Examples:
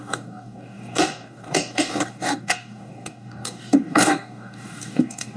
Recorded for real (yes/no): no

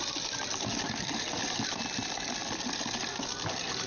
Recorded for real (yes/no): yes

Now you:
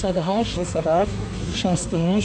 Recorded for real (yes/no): no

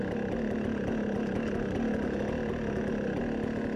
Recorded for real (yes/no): yes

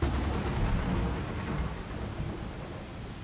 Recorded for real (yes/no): yes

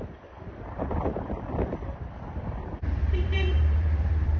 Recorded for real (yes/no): no